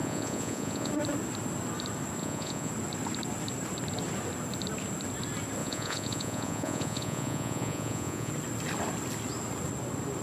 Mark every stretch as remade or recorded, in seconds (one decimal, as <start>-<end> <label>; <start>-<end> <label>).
0.0-0.9 remade; 0.9-2.2 recorded; 2.2-2.7 remade; 2.7-5.6 recorded; 5.6-8.3 remade; 8.3-10.2 recorded